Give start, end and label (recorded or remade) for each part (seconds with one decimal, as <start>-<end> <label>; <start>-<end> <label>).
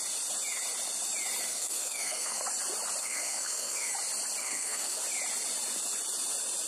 0.0-1.5 recorded; 1.5-2.4 remade; 2.4-3.0 recorded; 3.0-3.9 remade; 3.9-4.4 recorded; 4.4-5.0 remade; 5.0-6.7 recorded